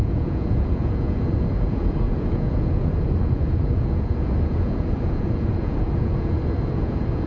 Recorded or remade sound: remade